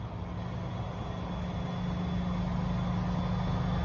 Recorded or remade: recorded